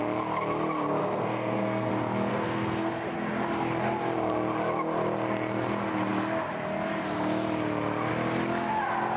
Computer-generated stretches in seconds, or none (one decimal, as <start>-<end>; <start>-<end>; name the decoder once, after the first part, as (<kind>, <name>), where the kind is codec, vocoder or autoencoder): 1.0-1.9 (codec, SNAC); 2.3-2.9